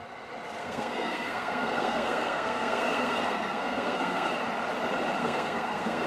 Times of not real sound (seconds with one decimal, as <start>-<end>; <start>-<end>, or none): 0.6-4.3; 5.2-6.1